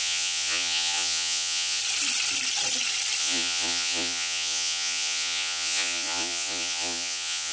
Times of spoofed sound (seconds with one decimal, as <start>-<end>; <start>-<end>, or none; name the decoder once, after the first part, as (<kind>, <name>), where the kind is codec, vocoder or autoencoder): 0.0-1.8 (vocoder, Vocos); 3.2-7.5